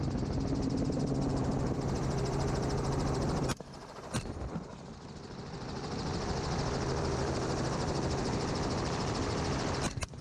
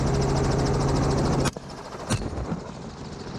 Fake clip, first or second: first